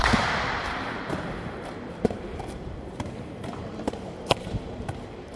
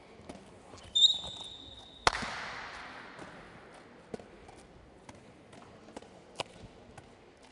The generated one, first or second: first